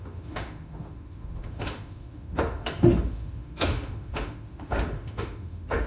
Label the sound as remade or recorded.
remade